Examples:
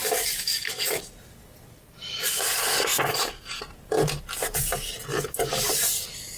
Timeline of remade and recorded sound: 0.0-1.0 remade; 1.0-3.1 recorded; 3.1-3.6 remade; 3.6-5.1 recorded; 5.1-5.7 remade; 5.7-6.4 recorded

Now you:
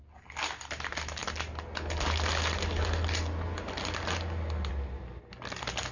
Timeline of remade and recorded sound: 0.0-5.9 recorded